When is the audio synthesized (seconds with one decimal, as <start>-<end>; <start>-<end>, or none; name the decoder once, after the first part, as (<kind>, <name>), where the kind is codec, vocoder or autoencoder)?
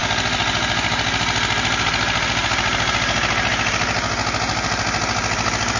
none